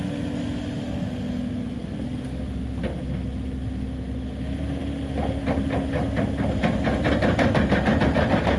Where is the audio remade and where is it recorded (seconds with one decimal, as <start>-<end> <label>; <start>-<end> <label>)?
0.0-8.6 recorded